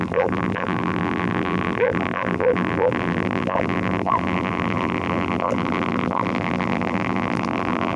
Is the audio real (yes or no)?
no